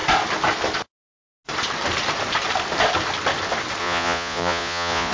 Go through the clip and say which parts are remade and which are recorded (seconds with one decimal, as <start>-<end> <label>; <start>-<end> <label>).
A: 0.0-3.8 recorded; 3.8-5.1 remade